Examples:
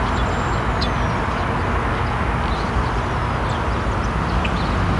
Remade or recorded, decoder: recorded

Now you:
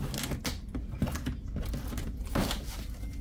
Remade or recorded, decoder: recorded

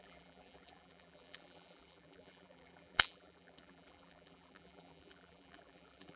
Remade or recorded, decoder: remade, vocoder, BigVGAN v2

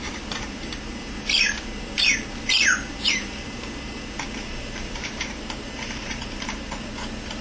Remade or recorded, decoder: remade, vocoder, BigVGAN v2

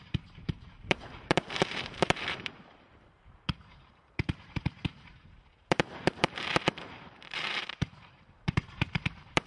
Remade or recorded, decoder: remade, vocoder, BigVGAN v2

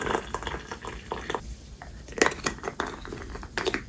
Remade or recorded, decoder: recorded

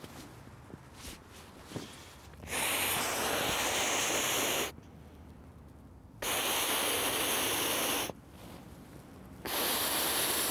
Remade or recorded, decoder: recorded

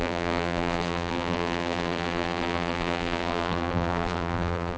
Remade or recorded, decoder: remade, vocoder, BigVGAN v2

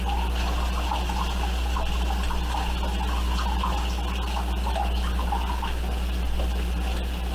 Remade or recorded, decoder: recorded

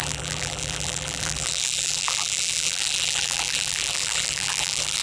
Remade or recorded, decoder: remade, vocoder, BigVGAN v2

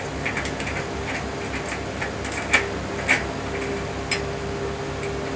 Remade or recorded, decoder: recorded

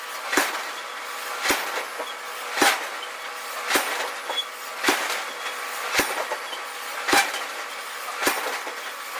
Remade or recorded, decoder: recorded